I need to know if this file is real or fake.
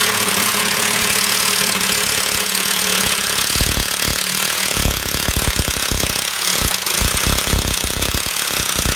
fake